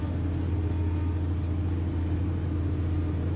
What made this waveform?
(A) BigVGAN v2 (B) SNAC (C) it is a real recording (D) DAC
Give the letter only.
C